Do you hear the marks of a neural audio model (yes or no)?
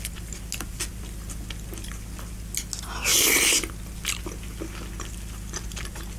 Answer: no